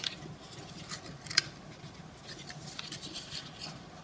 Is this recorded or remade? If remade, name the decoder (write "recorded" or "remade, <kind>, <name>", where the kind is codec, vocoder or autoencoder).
recorded